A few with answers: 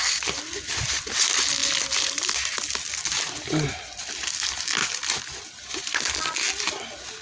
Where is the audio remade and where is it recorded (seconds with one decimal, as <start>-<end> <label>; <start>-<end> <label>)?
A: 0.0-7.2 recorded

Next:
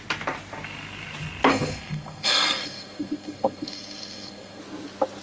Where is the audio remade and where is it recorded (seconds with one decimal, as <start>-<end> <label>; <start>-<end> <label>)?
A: 0.0-1.5 recorded; 1.5-4.6 remade; 4.6-5.2 recorded

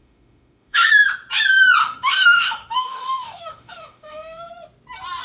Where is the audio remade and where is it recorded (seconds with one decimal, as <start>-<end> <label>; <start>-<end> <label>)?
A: 0.0-0.9 remade; 0.9-1.8 recorded; 1.8-4.5 remade; 4.5-5.2 recorded

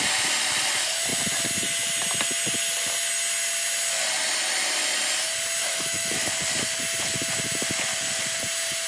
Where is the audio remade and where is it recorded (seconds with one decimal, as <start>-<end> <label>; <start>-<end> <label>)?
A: 0.0-5.6 recorded; 5.6-6.3 remade; 6.3-8.9 recorded

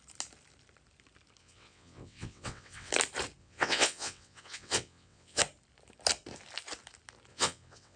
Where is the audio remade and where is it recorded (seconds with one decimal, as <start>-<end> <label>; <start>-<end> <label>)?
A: 0.0-1.4 recorded; 1.4-2.9 remade; 2.9-3.4 recorded; 3.4-5.4 remade; 5.4-7.3 recorded; 7.3-8.0 remade

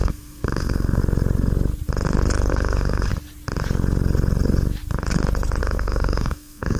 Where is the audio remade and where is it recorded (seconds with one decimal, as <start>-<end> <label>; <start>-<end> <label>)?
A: 0.0-1.0 remade; 1.0-2.5 recorded; 2.5-3.1 remade; 3.1-5.6 recorded; 5.6-6.8 remade

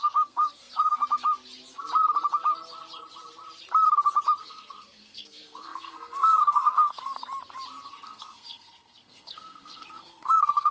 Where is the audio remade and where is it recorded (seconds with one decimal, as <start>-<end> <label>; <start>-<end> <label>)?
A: 0.0-1.0 remade; 1.0-4.4 recorded; 4.4-7.2 remade; 7.2-7.9 recorded; 7.9-10.7 remade

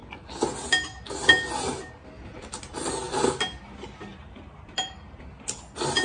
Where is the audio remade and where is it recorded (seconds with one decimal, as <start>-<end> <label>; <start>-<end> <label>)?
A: 0.0-4.1 recorded; 4.1-5.3 remade; 5.3-6.0 recorded